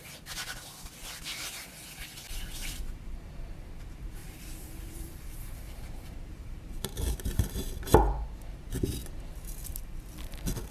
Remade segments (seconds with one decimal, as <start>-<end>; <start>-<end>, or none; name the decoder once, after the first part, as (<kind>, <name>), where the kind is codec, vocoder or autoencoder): 4.2-7.0 (vocoder, BigVGAN v2)